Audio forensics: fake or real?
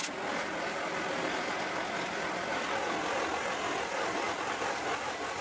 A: real